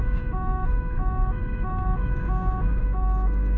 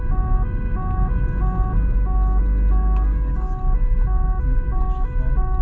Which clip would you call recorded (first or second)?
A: second